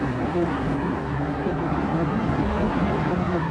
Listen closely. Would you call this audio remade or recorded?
remade